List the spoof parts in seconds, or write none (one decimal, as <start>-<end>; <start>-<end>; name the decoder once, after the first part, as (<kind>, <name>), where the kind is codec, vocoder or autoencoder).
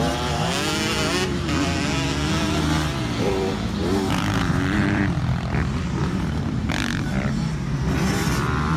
3.8-5.0 (vocoder, BigVGAN v2); 6.0-6.7